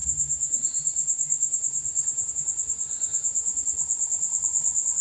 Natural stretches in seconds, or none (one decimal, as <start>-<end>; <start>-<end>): 2.3-3.1; 3.6-5.0